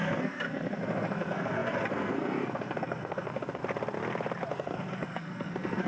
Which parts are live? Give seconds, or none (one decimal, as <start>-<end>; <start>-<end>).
3.6-4.5